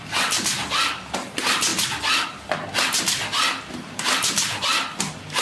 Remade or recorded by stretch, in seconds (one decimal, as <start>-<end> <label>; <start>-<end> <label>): 0.0-1.7 remade; 1.7-3.7 recorded; 3.7-5.4 remade